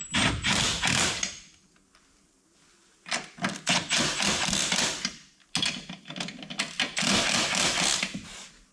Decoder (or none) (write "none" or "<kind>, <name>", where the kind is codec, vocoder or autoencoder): none